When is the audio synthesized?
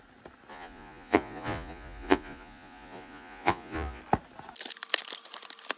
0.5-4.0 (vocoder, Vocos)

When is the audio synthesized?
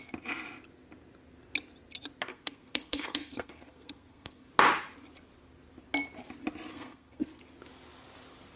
2.3-4.5 (codec, SNAC); 6.7-7.4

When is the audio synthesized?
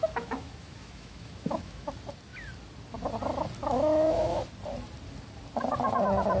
0.0-1.9 (autoencoder, DAC-VAE); 3.6-4.4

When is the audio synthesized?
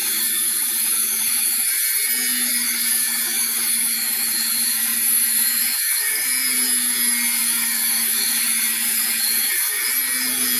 0.0-1.7 (codec, DAC); 2.5-6.3; 7.4-9.8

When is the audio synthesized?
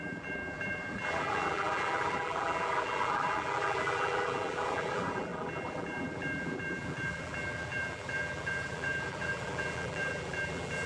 0.0-10.9 (vocoder, BigVGAN v2)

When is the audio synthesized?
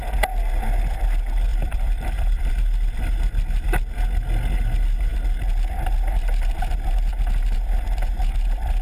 1.5-2.5 (vocoder, BigVGAN v2)